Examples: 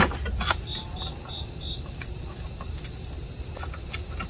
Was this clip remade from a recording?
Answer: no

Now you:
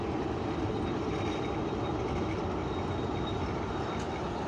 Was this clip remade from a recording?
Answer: no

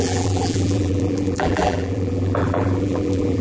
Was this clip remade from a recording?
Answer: yes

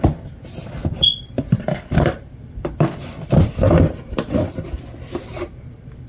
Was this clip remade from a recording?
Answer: yes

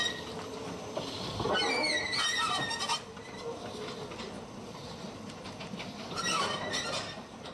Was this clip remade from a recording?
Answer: no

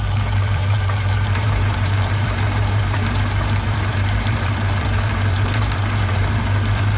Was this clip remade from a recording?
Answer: yes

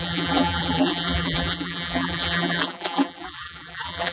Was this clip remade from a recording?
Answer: yes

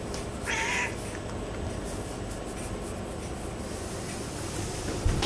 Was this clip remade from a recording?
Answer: no